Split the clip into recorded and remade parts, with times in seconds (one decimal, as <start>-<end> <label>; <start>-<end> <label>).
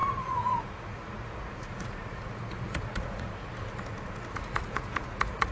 0.0-3.3 remade; 3.3-4.3 recorded; 4.3-5.5 remade